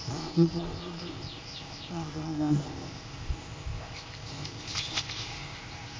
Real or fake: fake